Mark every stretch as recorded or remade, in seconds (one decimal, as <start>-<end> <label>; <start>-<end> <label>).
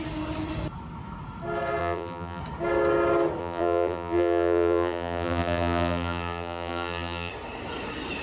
0.0-1.8 recorded; 1.8-2.4 remade; 2.4-3.4 recorded; 3.4-7.3 remade; 7.3-8.2 recorded